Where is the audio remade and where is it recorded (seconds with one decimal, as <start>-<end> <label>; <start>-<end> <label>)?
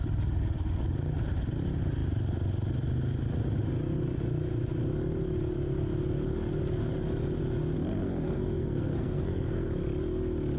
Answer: 0.0-8.0 recorded; 8.0-9.7 remade; 9.7-10.6 recorded